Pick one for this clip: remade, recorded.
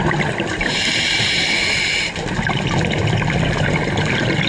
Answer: recorded